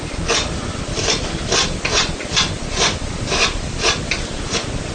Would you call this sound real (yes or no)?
yes